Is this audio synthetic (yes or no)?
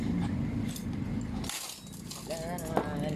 no